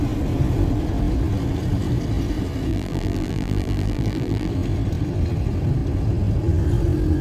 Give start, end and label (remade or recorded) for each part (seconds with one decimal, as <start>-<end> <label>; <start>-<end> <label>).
0.0-2.7 recorded; 2.7-4.5 remade; 4.5-7.2 recorded